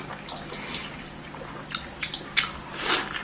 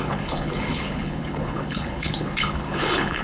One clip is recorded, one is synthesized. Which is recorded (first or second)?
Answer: first